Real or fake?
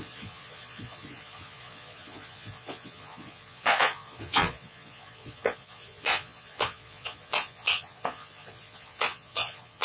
fake